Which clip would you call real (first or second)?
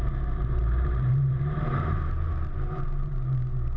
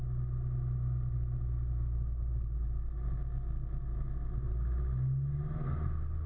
second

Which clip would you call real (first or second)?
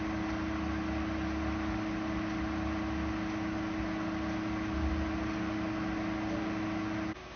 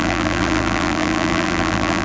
first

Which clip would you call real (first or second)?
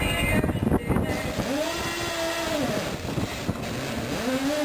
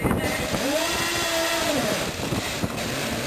first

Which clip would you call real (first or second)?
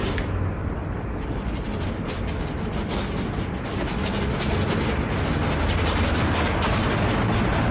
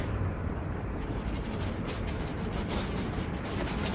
first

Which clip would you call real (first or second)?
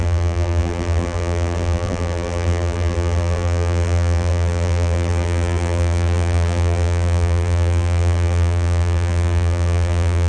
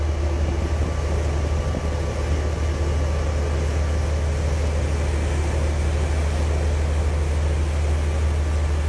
second